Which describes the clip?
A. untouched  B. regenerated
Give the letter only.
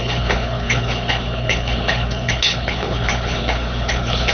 B